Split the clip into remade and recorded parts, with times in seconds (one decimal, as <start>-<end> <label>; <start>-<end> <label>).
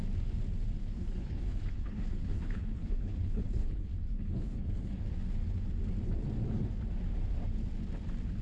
0.0-0.8 recorded; 0.8-4.9 remade; 4.9-8.4 recorded